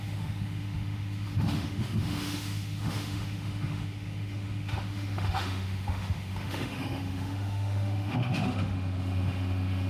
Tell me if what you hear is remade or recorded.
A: remade